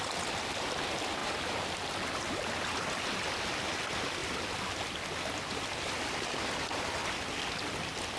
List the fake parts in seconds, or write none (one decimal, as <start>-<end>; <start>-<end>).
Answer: none